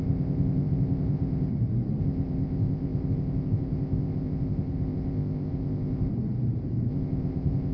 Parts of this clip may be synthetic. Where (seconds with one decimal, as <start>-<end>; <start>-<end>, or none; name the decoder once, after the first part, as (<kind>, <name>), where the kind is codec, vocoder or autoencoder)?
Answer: 0.0-1.5 (codec, ZipCodec); 2.0-6.1; 6.9-7.7